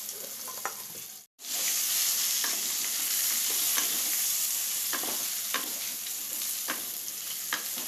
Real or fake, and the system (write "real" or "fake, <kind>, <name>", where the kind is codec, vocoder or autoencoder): real